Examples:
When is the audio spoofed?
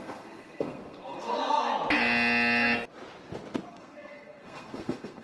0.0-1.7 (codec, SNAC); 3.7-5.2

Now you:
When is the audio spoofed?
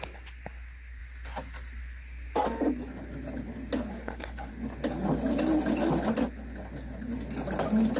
3.9-4.5 (codec, SNAC)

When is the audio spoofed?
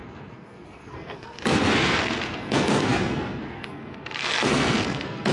0.0-5.3 (codec, SNAC)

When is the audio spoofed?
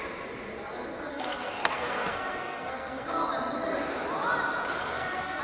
1.1-3.3 (codec, SNAC); 4.8-5.4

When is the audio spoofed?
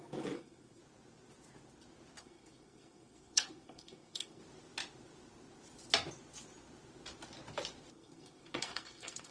0.0-0.8 (codec, SNAC); 2.2-4.4; 7.9-9.3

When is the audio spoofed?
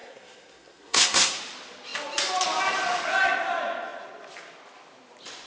0.0-1.4 (codec, SNAC)